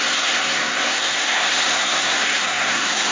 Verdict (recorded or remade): remade